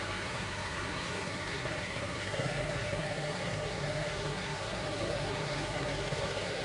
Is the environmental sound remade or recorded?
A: remade